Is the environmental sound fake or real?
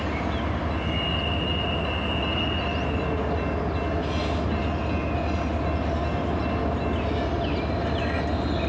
real